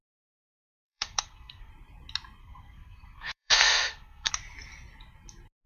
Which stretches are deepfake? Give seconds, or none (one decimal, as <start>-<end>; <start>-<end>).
0.8-1.7; 2.4-4.3

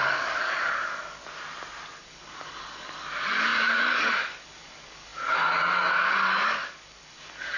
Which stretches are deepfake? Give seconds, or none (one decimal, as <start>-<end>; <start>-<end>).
0.0-1.2; 2.0-7.6

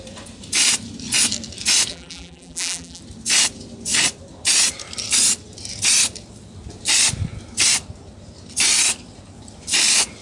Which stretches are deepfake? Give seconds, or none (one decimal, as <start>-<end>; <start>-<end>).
1.9-3.0

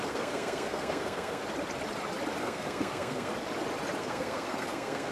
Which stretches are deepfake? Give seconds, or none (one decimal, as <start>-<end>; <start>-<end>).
0.0-1.4; 2.4-3.3; 4.0-5.1

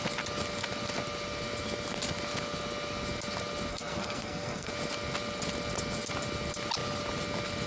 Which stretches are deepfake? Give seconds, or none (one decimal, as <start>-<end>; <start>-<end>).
3.7-4.7

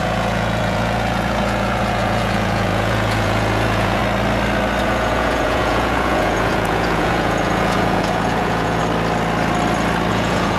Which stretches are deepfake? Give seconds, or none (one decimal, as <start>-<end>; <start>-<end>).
0.0-4.0; 4.8-8.8; 10.1-10.6